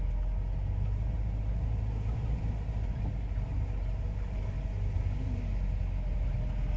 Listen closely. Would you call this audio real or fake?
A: real